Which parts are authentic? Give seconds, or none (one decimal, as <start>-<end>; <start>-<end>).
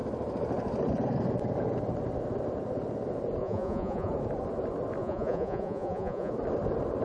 0.0-3.4; 4.1-5.0; 6.3-7.0